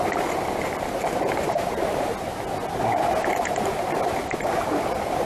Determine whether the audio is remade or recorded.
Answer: recorded